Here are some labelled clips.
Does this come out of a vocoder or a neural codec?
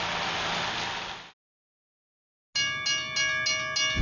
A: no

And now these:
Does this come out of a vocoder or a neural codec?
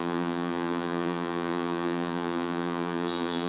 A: yes